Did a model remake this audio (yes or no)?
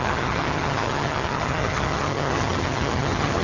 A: yes